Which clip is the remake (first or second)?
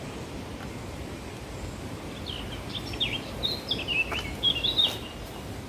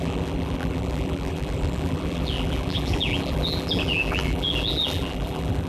second